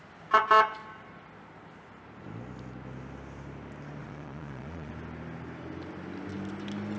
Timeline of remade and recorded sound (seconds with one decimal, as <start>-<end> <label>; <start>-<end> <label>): 0.0-4.0 recorded; 4.0-4.9 remade; 4.9-7.0 recorded